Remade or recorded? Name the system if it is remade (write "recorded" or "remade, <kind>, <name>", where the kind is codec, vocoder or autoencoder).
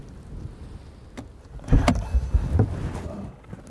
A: recorded